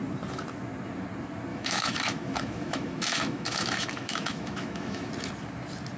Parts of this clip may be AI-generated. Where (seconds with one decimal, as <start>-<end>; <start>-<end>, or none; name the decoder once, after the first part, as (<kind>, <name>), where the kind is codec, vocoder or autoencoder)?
1.5-5.1 (autoencoder, DAC-VAE)